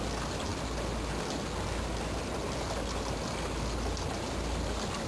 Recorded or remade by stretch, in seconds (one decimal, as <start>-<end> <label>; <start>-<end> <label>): 0.0-5.1 recorded